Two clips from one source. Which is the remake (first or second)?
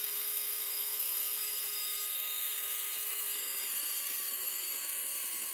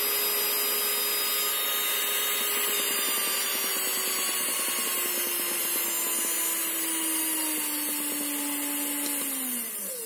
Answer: first